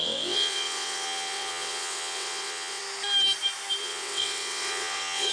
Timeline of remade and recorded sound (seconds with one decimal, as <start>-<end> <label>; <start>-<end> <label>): 0.0-2.8 remade; 2.8-3.8 recorded; 3.8-5.3 remade